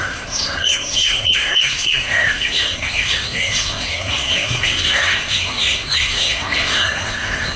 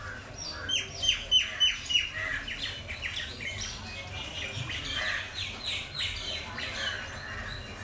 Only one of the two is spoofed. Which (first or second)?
first